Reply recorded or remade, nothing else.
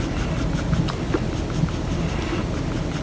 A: recorded